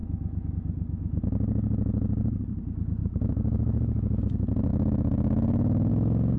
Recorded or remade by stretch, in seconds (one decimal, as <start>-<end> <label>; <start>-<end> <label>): 0.0-3.0 recorded; 3.0-4.2 remade; 4.2-4.7 recorded; 4.7-5.9 remade; 5.9-6.4 recorded